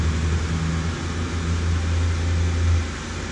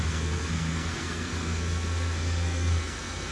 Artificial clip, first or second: second